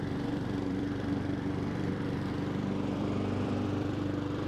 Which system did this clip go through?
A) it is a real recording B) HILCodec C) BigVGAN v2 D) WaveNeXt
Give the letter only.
C